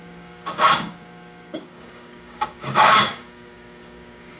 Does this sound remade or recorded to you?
remade